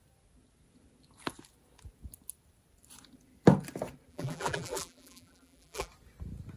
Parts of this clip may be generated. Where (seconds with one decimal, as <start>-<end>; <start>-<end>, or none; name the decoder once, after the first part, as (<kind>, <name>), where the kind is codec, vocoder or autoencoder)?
4.1-5.9 (vocoder, BigVGAN v2)